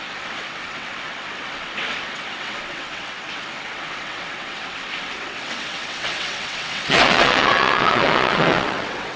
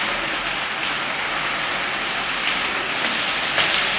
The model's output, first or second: first